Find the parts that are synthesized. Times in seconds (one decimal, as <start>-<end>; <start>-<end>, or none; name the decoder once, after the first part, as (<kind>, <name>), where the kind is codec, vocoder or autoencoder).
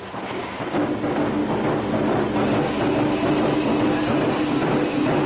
none